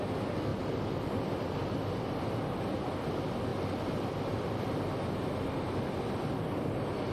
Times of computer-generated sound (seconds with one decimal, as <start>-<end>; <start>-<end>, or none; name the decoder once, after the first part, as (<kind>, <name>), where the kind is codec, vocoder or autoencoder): 0.5-3.1 (vocoder, BigVGAN v2); 3.5-7.1